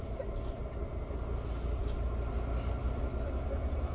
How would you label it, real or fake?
real